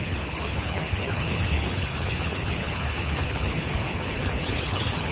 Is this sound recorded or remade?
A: remade